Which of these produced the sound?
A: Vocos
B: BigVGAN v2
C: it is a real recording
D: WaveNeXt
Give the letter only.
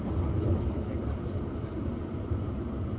B